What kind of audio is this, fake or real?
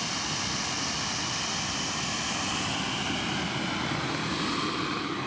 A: real